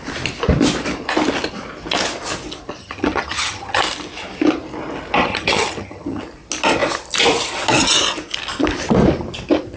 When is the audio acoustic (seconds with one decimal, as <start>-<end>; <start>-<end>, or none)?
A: 0.0-2.8; 3.8-5.3; 6.2-9.8